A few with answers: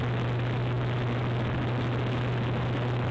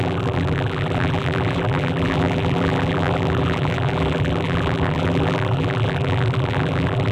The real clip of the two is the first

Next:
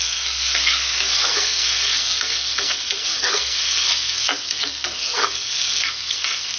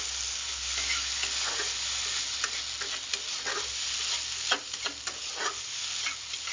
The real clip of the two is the second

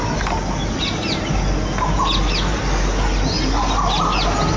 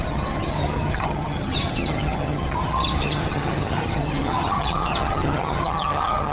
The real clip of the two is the first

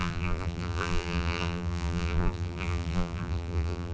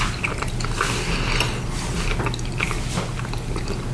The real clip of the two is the second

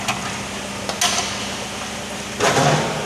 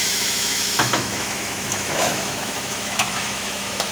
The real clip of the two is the first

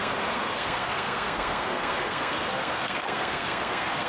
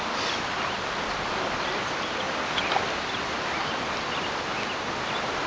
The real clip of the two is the second